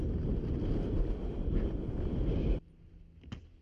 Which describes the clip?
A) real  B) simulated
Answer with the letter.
A